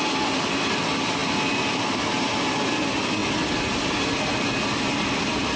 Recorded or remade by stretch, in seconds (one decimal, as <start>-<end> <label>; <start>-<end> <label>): 0.0-5.6 recorded